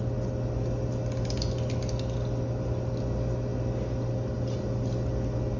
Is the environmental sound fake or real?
real